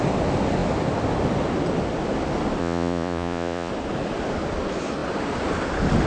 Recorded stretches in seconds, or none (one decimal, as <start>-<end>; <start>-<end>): 0.0-2.6; 3.7-6.1